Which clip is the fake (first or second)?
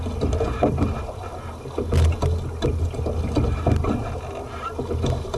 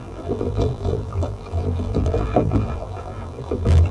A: second